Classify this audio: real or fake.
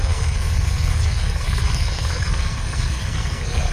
fake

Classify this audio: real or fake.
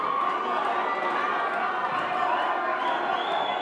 real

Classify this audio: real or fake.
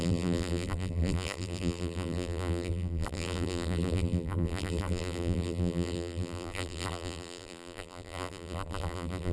fake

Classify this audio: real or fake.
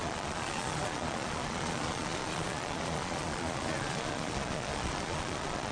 fake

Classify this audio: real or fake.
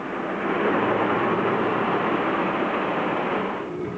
fake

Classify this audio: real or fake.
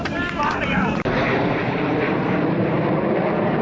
fake